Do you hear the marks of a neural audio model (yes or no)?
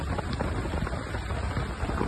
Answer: no